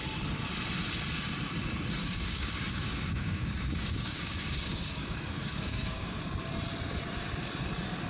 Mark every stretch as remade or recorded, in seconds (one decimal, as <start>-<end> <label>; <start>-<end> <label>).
0.0-2.0 recorded; 2.0-6.2 remade; 6.2-8.1 recorded